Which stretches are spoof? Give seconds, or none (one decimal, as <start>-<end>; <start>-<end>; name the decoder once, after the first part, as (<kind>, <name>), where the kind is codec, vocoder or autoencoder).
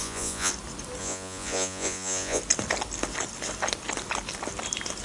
0.0-0.5 (vocoder, Vocos); 1.0-2.4